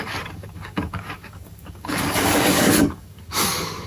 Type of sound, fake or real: fake